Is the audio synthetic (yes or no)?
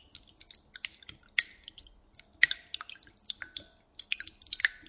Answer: no